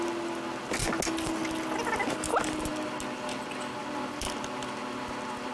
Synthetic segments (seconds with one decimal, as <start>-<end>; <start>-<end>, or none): none